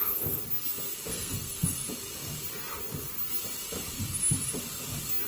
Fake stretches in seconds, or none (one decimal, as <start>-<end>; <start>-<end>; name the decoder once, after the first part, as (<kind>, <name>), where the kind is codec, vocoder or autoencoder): 0.0-0.4 (codec, SNAC); 1.1-1.8